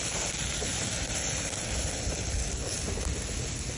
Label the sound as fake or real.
real